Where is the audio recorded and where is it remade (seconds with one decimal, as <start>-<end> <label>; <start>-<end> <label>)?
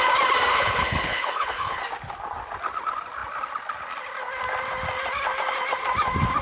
0.0-0.5 recorded; 0.5-1.8 remade; 1.8-6.4 recorded